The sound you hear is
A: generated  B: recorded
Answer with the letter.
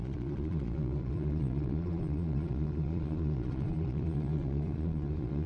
A